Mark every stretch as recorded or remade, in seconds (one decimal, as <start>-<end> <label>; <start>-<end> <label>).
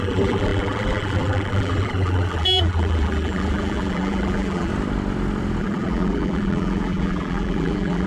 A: 0.0-4.7 remade; 4.7-5.6 recorded; 5.6-8.1 remade